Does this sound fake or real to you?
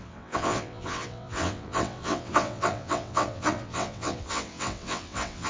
fake